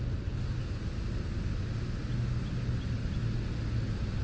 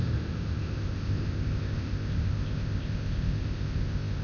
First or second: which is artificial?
second